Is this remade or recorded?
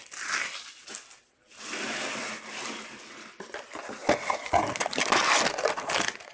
recorded